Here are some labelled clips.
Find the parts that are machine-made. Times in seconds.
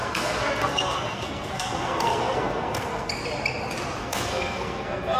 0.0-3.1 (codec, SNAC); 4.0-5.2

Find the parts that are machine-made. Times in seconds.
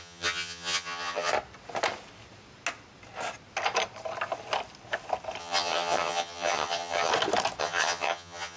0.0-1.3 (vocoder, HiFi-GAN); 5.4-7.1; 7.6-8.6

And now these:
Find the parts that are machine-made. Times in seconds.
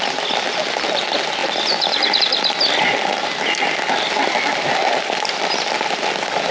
none